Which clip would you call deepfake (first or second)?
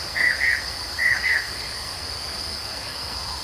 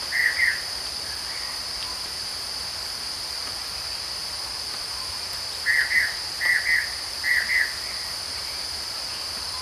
first